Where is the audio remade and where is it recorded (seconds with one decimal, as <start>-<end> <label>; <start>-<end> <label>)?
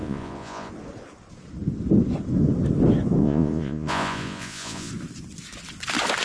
0.0-0.7 remade; 0.7-3.2 recorded; 3.2-4.9 remade; 4.9-6.2 recorded